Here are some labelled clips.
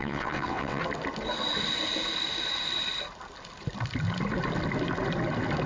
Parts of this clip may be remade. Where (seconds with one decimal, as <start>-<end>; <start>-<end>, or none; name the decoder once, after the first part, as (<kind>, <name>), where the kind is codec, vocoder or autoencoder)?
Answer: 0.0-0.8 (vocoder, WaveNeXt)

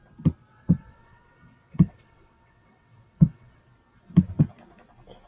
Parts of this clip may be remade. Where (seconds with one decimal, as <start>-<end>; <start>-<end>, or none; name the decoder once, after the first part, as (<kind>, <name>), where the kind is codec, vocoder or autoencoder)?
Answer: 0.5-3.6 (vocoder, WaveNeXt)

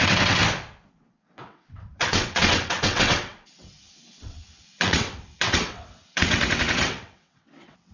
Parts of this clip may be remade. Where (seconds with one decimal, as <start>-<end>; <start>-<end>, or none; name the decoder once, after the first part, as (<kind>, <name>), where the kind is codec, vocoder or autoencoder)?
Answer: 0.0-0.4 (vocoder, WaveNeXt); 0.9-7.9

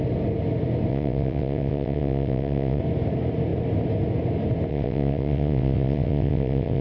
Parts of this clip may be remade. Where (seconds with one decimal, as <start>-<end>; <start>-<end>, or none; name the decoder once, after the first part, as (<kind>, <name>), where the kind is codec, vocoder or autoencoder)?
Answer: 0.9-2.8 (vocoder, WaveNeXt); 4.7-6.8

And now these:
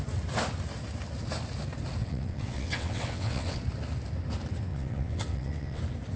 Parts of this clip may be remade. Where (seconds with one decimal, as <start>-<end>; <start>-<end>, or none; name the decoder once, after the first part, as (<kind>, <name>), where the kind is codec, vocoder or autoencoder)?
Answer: 2.0-3.6 (vocoder, WaveNeXt); 4.7-5.8

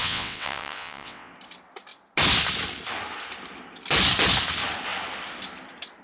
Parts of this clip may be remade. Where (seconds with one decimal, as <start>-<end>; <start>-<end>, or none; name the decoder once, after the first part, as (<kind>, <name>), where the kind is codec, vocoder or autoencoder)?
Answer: 0.0-1.3 (vocoder, WaveNeXt)